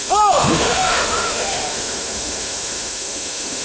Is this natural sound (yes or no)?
no